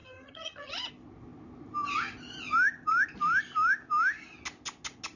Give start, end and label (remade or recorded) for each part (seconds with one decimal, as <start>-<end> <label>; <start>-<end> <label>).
0.0-0.9 remade; 0.9-5.2 recorded